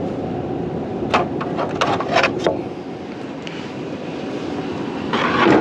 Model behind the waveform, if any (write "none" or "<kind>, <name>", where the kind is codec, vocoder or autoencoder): none